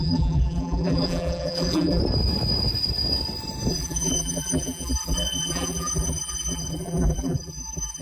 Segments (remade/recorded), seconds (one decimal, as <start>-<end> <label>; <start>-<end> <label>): 0.0-2.0 remade; 2.0-3.7 recorded; 3.7-8.0 remade